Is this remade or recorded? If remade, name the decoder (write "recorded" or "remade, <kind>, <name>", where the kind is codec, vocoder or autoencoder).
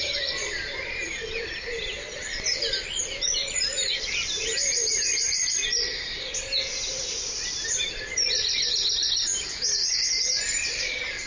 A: remade, vocoder, BigVGAN v2